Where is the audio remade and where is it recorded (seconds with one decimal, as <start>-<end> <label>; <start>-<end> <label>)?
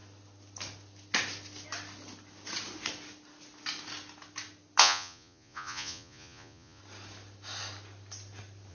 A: 0.0-4.8 recorded; 4.8-6.8 remade; 6.8-8.7 recorded